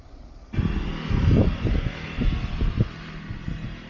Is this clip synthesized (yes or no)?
no